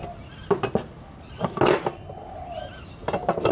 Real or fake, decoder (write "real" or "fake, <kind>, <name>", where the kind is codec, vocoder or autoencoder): real